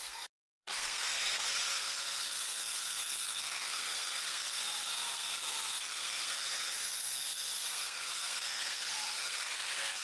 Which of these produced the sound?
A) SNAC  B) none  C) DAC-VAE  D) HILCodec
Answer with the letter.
A